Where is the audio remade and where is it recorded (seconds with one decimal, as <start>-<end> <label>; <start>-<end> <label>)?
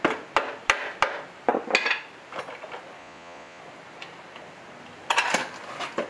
0.0-3.0 recorded; 3.0-3.6 remade; 3.6-6.1 recorded